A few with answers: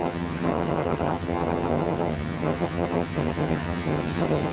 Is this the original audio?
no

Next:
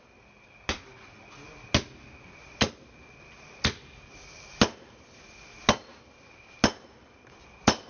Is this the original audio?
yes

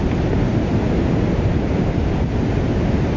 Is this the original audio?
yes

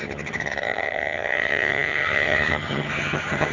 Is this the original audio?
no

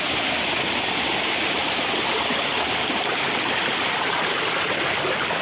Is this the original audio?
yes